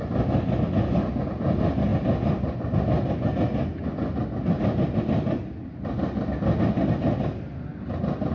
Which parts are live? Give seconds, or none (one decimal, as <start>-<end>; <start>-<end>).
0.0-8.3